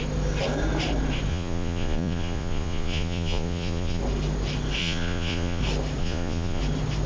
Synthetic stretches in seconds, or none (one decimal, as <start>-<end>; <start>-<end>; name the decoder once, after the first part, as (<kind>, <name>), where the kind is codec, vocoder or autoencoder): 1.3-4.0 (vocoder, Vocos); 4.8-5.6; 6.0-6.6